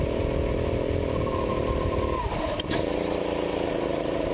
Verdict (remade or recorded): remade